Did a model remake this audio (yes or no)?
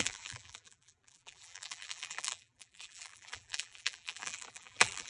yes